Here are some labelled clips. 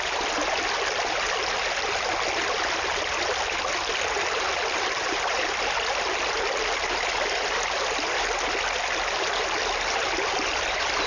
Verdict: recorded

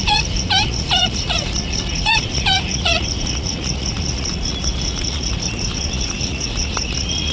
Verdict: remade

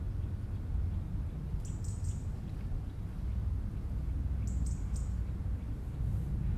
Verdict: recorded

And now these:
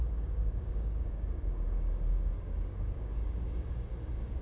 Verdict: remade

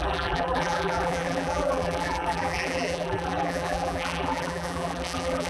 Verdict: remade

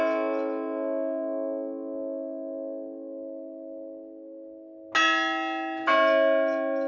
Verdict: recorded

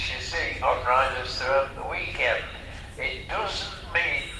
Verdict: remade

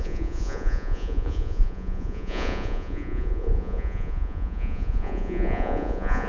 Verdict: remade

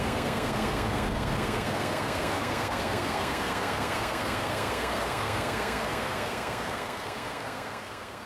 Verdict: remade